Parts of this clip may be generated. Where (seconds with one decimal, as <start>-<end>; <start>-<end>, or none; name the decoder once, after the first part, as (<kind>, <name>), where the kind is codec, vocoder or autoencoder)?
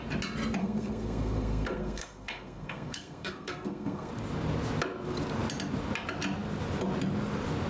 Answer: 0.6-4.1 (codec, SNAC)